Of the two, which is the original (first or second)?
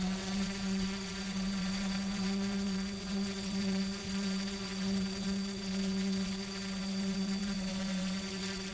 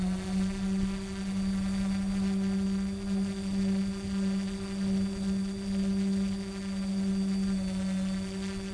second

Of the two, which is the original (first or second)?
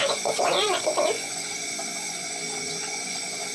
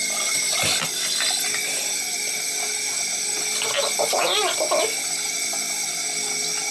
second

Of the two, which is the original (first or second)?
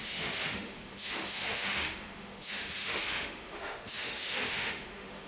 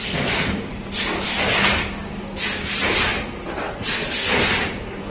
second